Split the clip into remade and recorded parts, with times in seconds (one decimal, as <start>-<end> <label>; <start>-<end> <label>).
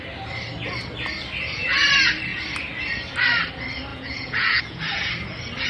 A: 0.0-3.9 recorded; 3.9-5.1 remade; 5.1-5.7 recorded